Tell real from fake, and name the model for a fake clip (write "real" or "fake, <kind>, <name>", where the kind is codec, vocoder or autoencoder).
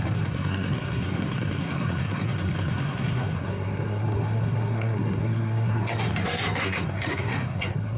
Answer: fake, codec, SNAC